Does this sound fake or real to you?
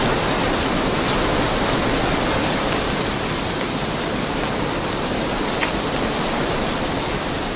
real